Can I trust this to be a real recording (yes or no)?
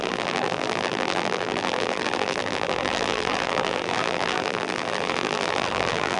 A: no